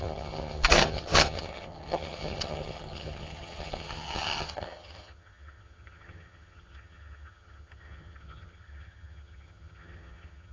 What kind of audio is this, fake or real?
fake